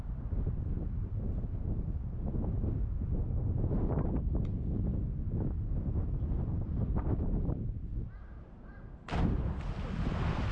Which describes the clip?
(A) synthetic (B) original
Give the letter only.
B